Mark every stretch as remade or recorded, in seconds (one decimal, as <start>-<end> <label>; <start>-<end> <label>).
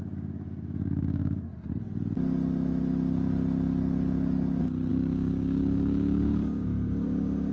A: 0.0-1.5 remade; 1.5-4.9 recorded; 4.9-7.5 remade